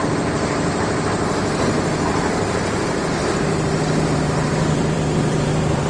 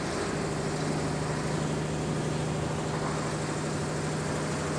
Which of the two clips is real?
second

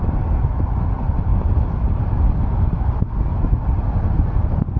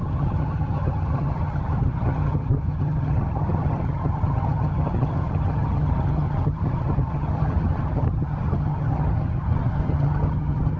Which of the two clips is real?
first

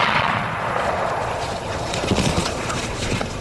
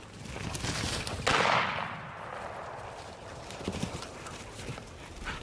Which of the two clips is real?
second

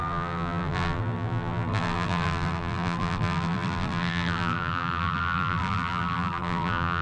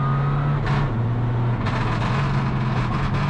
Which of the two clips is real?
second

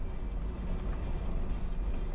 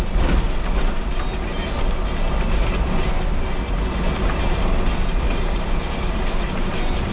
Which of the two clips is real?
first